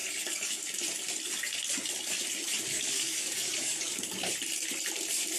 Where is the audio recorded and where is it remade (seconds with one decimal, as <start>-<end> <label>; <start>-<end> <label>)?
0.0-0.6 remade; 0.6-2.7 recorded; 2.7-4.3 remade; 4.3-5.4 recorded